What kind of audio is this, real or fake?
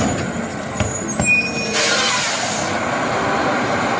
real